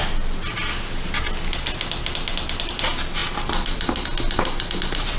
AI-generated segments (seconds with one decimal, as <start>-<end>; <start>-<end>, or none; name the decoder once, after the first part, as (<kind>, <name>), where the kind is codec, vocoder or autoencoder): none